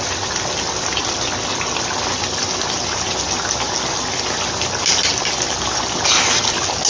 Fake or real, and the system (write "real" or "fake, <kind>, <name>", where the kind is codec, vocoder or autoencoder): real